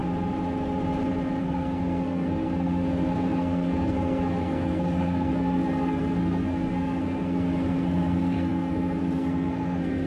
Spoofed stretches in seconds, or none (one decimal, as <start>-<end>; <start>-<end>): 1.4-10.1